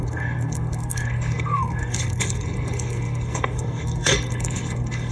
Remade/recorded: remade